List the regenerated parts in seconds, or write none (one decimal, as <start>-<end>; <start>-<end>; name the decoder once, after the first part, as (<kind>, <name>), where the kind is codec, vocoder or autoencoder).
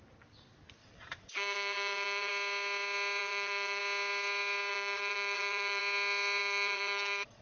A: 0.8-2.3 (vocoder, Vocos); 3.2-3.8; 4.7-5.8; 6.4-7.4